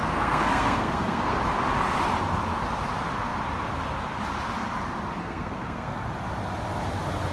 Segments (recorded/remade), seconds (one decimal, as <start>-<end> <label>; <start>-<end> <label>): 0.0-1.4 remade; 1.4-5.2 recorded; 5.2-6.0 remade; 6.0-7.3 recorded